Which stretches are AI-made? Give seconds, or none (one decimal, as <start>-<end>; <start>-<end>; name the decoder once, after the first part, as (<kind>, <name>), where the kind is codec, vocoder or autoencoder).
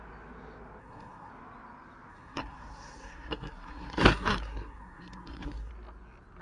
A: 0.8-1.3 (codec, SNAC); 2.1-5.7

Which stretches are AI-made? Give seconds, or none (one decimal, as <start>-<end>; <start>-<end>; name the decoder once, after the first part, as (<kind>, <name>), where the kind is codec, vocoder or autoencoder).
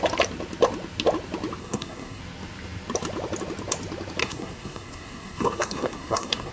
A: 1.6-2.2 (codec, SNAC); 4.2-6.5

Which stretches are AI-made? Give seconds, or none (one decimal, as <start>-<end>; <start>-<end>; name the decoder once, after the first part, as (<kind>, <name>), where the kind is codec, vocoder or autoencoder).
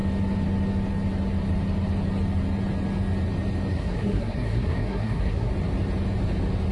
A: 3.7-5.5 (codec, SNAC)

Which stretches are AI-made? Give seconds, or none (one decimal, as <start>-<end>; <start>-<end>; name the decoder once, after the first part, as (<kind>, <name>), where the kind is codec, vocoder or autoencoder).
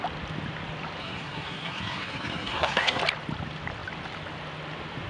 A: 1.0-3.0 (codec, SNAC)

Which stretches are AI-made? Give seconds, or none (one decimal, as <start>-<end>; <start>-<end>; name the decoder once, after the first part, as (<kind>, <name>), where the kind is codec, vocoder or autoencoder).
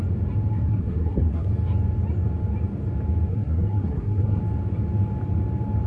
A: 0.5-1.5 (codec, SNAC); 3.3-4.4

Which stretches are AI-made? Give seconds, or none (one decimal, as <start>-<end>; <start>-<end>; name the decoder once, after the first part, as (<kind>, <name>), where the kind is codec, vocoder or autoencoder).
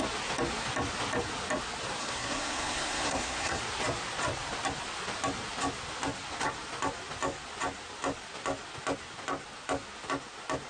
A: 2.0-3.6 (codec, SNAC)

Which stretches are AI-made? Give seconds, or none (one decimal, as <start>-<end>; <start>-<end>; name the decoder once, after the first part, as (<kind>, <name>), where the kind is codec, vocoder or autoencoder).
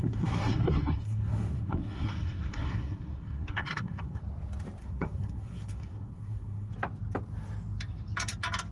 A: 0.0-4.2 (codec, SNAC); 4.8-6.7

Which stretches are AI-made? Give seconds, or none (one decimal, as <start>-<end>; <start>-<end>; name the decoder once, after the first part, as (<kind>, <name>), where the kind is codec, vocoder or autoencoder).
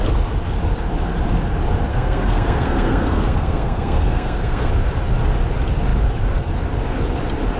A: 1.9-4.7 (codec, SNAC)